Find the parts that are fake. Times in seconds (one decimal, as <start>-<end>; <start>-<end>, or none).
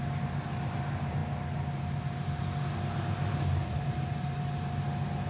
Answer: 3.6-4.3